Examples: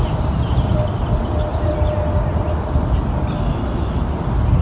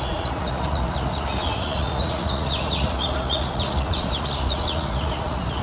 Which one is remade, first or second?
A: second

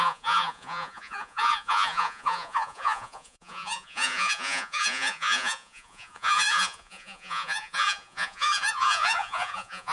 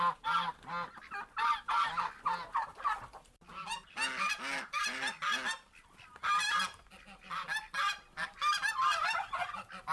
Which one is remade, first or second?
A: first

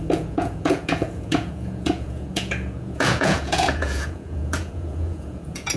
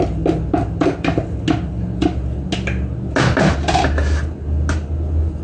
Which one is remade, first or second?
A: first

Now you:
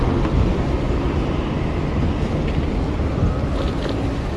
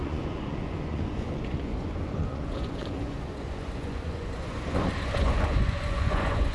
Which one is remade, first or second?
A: second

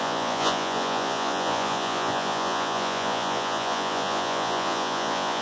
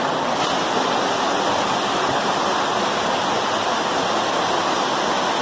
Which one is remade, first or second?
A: first